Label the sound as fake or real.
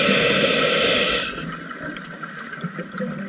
real